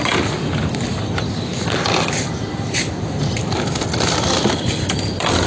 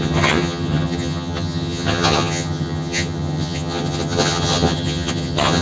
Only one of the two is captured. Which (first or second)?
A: first